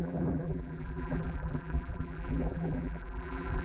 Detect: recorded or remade remade